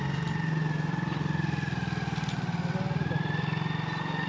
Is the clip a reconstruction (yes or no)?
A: no